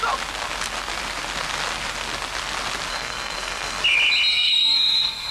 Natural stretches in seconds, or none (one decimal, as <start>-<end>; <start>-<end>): 0.0-2.9; 3.8-4.3